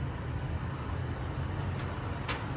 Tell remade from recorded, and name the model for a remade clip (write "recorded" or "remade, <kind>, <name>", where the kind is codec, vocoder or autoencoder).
recorded